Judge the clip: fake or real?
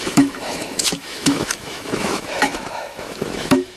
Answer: fake